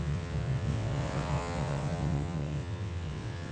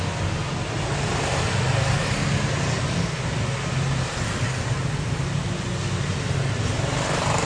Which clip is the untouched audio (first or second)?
second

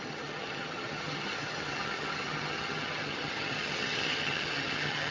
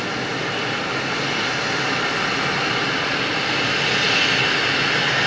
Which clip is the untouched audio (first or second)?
second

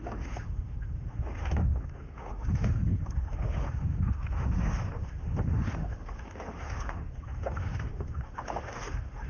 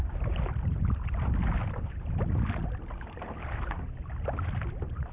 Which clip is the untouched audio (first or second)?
second